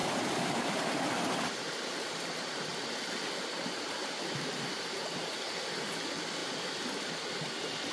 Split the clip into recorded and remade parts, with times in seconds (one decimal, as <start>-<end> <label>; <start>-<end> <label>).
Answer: 0.0-0.5 recorded; 0.5-2.7 remade; 2.7-3.6 recorded; 3.6-7.9 remade